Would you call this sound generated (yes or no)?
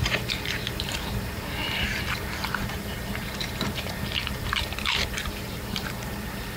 yes